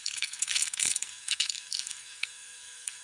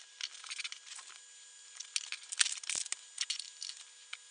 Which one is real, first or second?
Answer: second